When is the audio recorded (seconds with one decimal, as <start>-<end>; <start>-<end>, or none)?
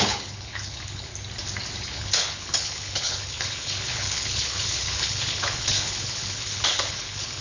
1.1-1.8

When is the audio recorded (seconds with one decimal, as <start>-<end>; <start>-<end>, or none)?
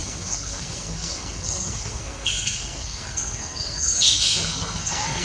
none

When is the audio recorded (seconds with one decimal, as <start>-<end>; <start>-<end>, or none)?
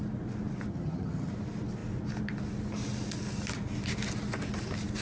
0.0-0.7; 1.3-5.0